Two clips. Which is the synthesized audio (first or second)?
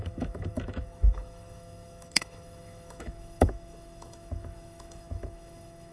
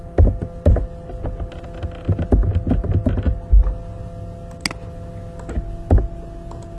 first